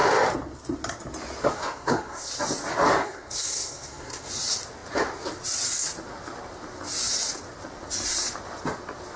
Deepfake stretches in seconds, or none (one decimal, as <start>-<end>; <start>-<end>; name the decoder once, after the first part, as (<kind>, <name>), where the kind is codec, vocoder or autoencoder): 1.4-2.3 (codec, SNAC); 3.0-4.3